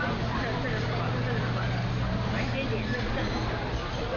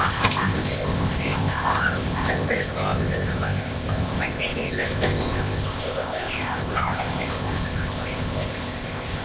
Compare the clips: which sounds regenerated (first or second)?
second